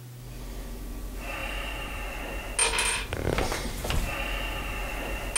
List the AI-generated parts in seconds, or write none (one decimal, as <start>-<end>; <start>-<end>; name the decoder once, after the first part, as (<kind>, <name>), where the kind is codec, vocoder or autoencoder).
1.4-2.0 (vocoder, BigVGAN v2)